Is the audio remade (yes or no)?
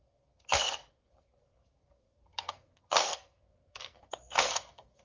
yes